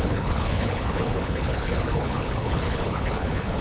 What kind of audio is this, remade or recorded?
remade